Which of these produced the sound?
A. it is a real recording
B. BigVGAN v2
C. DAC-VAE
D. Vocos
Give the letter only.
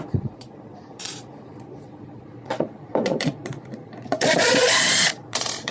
D